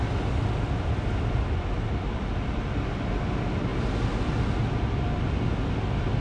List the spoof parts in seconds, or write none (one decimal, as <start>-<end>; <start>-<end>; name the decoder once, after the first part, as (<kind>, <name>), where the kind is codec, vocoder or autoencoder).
3.7-5.0 (vocoder, BigVGAN v2)